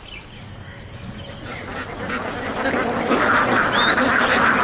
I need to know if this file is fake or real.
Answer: real